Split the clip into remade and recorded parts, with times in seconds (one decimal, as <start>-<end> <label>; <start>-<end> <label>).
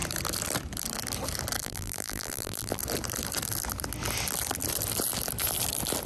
0.0-1.6 recorded; 1.6-2.8 remade; 2.8-6.1 recorded